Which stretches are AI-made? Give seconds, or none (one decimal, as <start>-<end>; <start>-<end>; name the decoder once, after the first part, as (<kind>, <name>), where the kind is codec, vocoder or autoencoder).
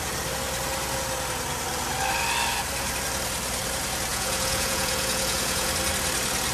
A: 4.1-5.7 (vocoder, Vocos)